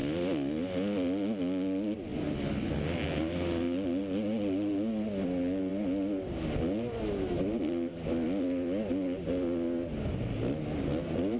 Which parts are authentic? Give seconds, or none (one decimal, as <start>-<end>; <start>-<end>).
0.0-11.4